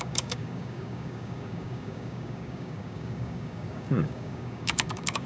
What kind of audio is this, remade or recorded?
remade